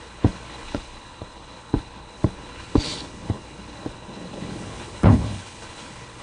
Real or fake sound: fake